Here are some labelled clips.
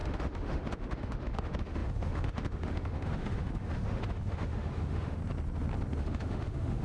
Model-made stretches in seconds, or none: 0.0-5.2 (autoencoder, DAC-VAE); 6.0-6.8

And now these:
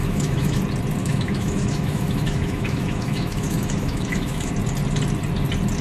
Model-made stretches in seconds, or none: 0.0-0.6 (autoencoder, DAC-VAE); 1.0-4.5

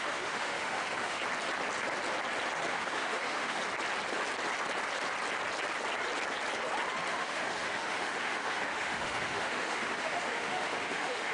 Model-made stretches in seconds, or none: 0.0-1.2 (autoencoder, DAC-VAE); 2.7-3.6; 7.1-11.3

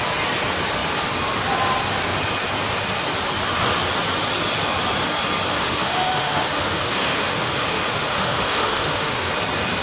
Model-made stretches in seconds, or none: 5.6-9.3 (autoencoder, DAC-VAE)

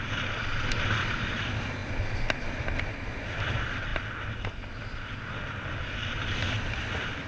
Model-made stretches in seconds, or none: none

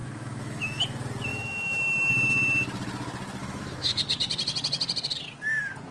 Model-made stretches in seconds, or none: 0.0-0.8 (autoencoder, DAC-VAE); 1.3-2.1; 3.4-4.0